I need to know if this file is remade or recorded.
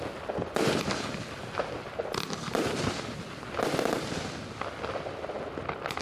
recorded